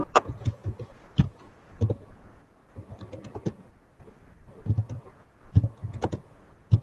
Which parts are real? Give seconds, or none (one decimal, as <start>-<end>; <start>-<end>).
0.6-1.2; 2.6-5.0